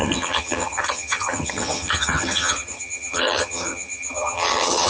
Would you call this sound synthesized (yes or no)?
yes